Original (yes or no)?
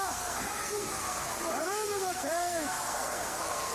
no